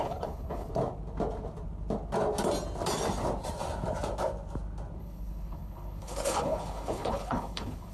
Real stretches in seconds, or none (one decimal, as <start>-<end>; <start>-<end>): 0.7-5.0